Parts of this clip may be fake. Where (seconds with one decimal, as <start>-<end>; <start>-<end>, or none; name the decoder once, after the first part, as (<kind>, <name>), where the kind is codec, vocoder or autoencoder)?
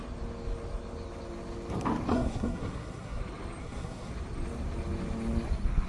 2.1-3.2 (codec, SNAC); 3.6-4.1